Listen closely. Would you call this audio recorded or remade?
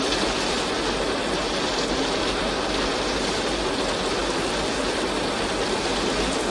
recorded